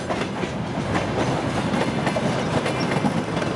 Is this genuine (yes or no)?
yes